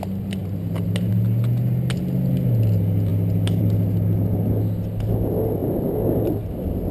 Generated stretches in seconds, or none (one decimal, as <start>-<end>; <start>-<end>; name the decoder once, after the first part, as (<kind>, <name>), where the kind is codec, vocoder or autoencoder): none

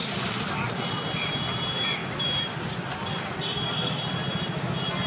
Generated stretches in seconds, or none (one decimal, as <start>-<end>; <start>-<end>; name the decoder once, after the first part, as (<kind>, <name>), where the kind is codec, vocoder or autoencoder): 0.0-2.0 (vocoder, BigVGAN v2)

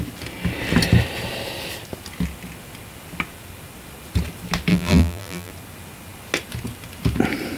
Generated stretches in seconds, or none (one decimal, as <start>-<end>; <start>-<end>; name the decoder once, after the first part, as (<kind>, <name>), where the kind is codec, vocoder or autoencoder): 4.7-5.5 (vocoder, BigVGAN v2)

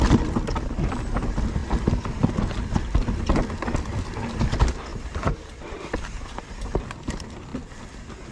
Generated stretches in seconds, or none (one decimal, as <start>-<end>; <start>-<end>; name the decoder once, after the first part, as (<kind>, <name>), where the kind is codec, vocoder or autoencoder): 4.9-6.8 (vocoder, BigVGAN v2)

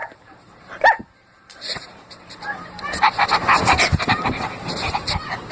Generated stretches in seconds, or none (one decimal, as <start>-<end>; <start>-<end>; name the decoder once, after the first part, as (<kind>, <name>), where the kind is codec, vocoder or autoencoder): 0.0-3.3 (vocoder, BigVGAN v2)

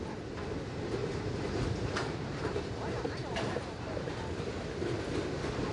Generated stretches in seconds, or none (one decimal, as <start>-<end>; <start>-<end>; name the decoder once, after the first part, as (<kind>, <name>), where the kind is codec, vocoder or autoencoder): 1.0-2.6 (vocoder, BigVGAN v2); 3.2-4.1

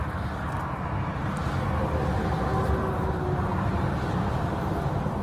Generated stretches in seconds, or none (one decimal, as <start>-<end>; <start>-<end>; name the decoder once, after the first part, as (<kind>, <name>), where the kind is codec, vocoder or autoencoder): 3.7-5.2 (vocoder, BigVGAN v2)